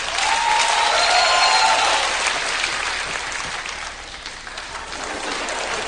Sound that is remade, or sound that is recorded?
recorded